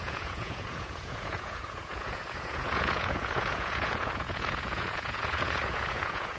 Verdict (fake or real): fake